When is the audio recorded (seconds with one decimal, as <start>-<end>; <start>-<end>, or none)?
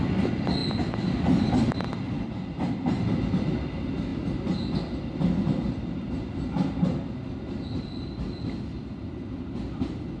0.0-10.2